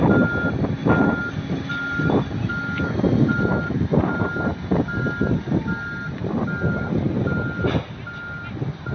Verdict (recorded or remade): recorded